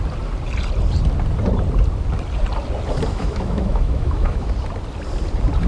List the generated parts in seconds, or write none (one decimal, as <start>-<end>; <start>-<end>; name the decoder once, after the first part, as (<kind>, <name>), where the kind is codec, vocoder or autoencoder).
3.1-4.5 (autoencoder, DAC-VAE)

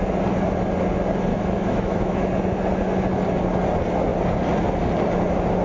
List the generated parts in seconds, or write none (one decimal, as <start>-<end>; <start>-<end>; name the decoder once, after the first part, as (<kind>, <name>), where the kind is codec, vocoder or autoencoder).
1.3-2.3 (autoencoder, DAC-VAE)

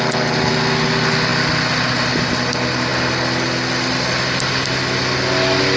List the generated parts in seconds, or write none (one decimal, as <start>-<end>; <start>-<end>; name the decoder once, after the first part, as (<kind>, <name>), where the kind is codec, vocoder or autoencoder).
none

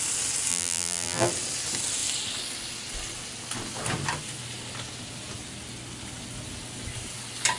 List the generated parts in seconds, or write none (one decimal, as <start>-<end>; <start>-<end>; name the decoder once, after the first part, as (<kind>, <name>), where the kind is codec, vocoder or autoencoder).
0.5-1.3 (vocoder, BigVGAN v2)

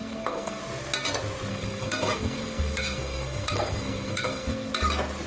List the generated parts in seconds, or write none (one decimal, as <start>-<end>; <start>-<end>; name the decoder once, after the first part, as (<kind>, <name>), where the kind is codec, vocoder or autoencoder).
0.0-0.6 (codec, SNAC); 1.5-4.7

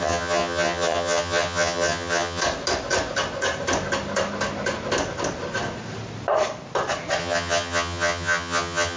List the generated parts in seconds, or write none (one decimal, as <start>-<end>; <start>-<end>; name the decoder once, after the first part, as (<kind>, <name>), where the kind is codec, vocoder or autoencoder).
0.0-2.4 (vocoder, HiFi-GAN); 7.2-9.0

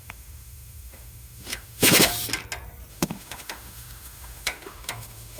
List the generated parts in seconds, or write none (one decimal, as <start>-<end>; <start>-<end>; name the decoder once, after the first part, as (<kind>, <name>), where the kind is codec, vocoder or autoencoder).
0.0-2.1 (autoencoder, DAC-VAE); 2.9-5.4

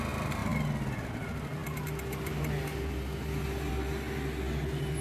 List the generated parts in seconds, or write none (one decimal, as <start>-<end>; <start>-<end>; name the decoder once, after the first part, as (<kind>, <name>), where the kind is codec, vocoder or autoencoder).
none